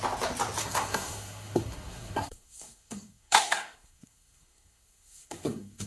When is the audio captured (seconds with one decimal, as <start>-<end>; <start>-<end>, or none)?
0.0-0.6